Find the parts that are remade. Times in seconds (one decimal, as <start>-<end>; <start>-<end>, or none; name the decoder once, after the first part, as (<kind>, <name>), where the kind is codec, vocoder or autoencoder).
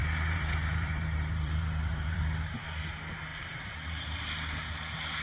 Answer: 0.0-2.2 (vocoder, BigVGAN v2); 3.3-4.2